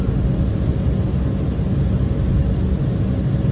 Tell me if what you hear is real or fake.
real